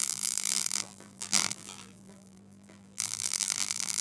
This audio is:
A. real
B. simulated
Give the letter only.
B